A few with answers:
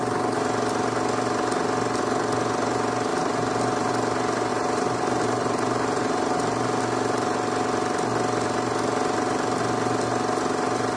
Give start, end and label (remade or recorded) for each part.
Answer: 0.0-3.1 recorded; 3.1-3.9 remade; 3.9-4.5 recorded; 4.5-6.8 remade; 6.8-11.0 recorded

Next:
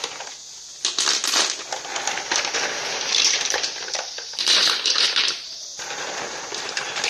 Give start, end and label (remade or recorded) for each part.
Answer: 0.0-0.7 remade; 0.7-2.9 recorded; 2.9-7.1 remade

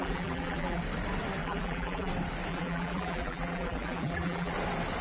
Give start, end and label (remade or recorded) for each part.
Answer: 0.0-0.8 remade; 0.8-1.4 recorded; 1.4-2.1 remade; 2.1-2.5 recorded; 2.5-4.5 remade; 4.5-5.0 recorded

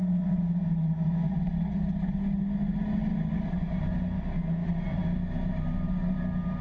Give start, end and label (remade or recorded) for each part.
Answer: 0.0-6.6 recorded

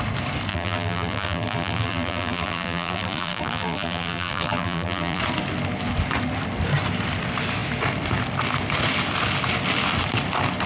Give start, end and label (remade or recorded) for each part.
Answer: 0.0-0.5 recorded; 0.5-5.2 remade; 5.2-10.7 recorded

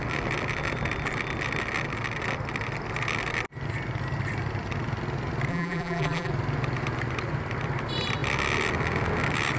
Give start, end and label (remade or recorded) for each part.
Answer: 0.0-5.5 recorded; 5.5-6.3 remade; 6.3-9.6 recorded